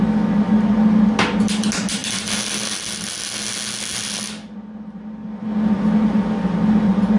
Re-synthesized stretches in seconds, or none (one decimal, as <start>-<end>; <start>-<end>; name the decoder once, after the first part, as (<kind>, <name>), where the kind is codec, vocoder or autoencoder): none